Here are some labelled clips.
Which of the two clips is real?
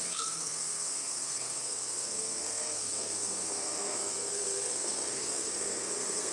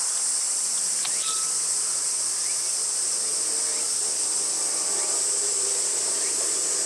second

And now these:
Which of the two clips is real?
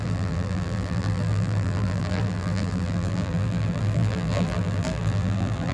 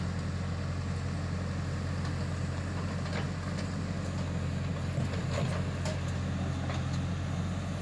second